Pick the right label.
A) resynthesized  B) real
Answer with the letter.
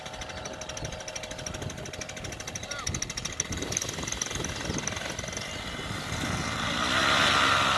B